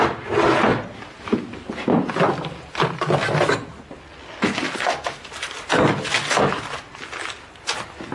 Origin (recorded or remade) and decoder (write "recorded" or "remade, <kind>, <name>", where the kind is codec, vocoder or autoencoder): recorded